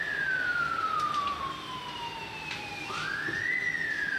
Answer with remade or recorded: recorded